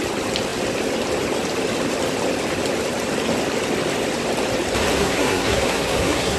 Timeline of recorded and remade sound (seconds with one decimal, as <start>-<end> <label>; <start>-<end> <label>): 0.0-5.0 recorded; 5.0-6.4 remade

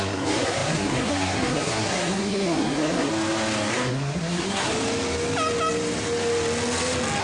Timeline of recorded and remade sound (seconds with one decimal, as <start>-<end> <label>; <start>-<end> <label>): 0.0-3.1 remade; 3.1-3.7 recorded; 3.7-4.7 remade; 4.7-7.2 recorded

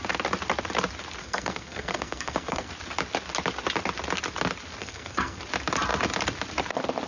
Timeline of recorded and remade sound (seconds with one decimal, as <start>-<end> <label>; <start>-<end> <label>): 0.0-1.2 recorded; 1.2-2.7 remade; 2.7-4.8 recorded; 4.8-5.4 remade; 5.4-7.1 recorded